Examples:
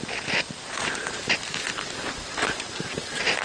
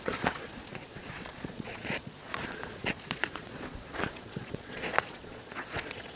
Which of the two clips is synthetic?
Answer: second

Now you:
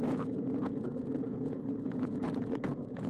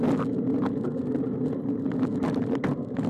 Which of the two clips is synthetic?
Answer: first